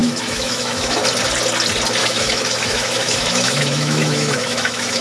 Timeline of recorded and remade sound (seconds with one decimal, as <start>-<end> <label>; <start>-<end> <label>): 0.0-1.0 remade; 1.0-2.0 recorded; 2.0-5.0 remade